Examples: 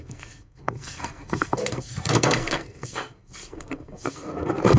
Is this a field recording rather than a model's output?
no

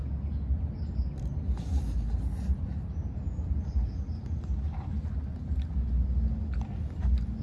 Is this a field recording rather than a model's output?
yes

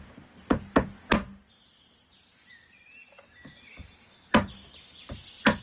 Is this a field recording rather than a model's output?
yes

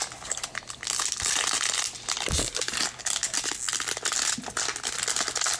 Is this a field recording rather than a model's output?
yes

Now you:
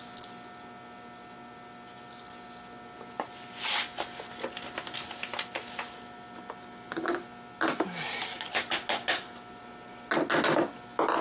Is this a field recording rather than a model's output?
yes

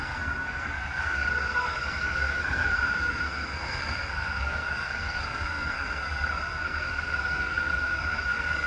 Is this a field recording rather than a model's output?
no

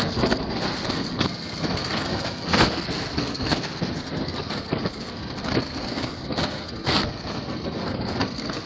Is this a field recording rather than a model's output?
no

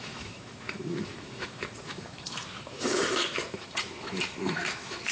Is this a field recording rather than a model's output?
no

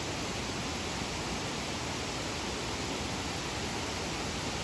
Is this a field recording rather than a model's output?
yes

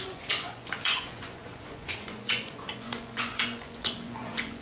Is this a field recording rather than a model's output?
no